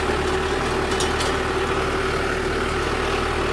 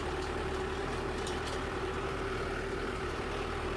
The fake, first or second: second